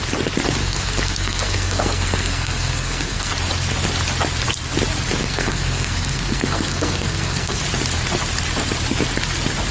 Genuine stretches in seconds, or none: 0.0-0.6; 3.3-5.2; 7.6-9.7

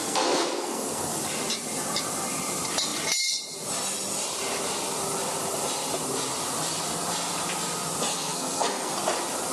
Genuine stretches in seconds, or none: 1.1-8.1; 8.9-9.5

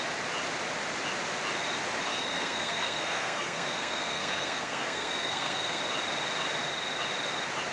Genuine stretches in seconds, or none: 0.0-2.1; 5.8-7.7

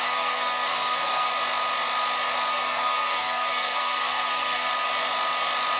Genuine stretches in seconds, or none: 1.3-2.5; 4.7-5.8

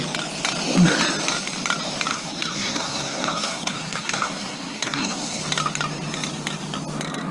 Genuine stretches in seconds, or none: 0.0-2.1; 5.4-7.3